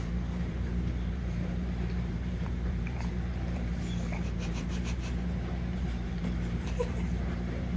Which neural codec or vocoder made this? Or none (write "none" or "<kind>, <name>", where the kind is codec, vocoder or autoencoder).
vocoder, BigVGAN v2